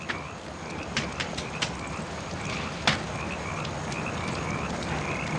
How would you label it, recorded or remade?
recorded